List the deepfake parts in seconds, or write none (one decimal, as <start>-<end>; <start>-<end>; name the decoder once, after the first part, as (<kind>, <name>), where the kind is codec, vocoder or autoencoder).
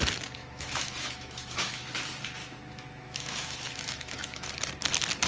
0.4-1.9 (autoencoder, DAC-VAE); 2.4-4.5